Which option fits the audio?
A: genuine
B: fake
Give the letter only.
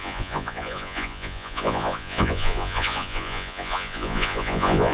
B